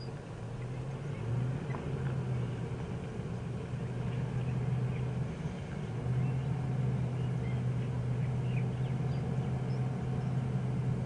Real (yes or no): yes